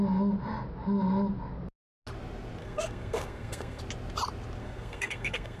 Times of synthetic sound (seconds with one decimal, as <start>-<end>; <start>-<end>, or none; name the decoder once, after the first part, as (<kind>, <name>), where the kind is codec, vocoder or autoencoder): 2.6-3.8 (codec, SNAC); 4.6-5.6